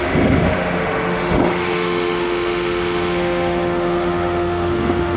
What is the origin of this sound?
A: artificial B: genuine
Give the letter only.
A